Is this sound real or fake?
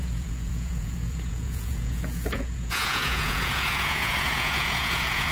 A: fake